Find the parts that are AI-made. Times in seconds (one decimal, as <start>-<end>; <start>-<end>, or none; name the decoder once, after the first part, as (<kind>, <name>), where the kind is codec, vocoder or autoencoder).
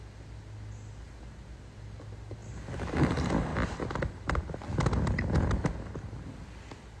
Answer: none